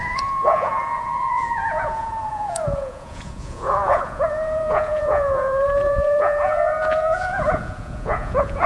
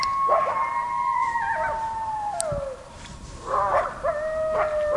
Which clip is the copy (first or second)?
first